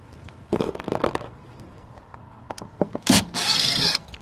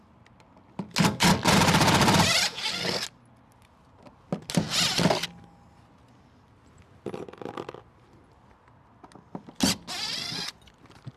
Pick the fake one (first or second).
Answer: first